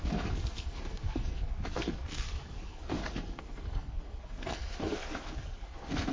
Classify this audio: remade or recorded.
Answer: remade